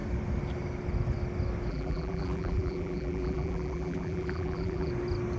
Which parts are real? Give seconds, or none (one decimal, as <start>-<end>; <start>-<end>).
0.0-1.7; 4.9-5.4